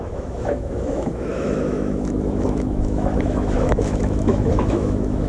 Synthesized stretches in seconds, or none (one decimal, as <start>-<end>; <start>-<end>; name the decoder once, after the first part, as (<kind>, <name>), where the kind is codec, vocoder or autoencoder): 0.0-5.3 (autoencoder, DAC-VAE)

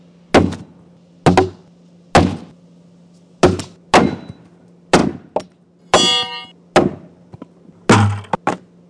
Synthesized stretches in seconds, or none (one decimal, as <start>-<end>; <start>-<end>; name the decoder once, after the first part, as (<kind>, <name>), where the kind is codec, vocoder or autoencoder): none